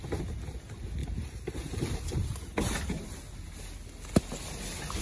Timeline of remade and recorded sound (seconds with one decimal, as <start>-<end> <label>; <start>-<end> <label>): 0.0-1.0 recorded; 1.0-3.2 remade; 3.2-5.0 recorded